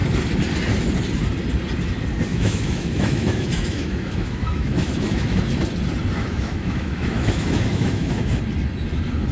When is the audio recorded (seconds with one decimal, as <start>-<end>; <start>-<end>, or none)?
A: 0.0-2.3; 5.4-6.2; 8.4-9.3